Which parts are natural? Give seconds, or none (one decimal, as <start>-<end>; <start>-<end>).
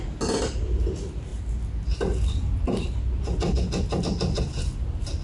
0.0-5.2